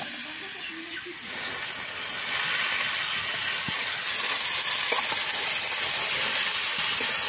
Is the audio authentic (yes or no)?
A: yes